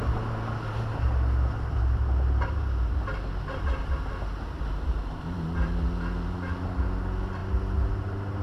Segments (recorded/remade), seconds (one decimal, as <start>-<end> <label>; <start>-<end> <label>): 0.0-8.4 recorded